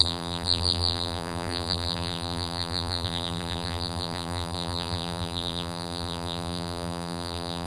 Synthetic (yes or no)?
yes